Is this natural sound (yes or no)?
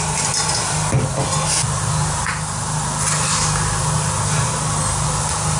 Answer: yes